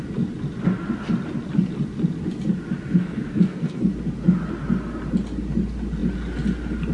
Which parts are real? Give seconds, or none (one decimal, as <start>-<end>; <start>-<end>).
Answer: 0.0-3.0; 3.9-6.9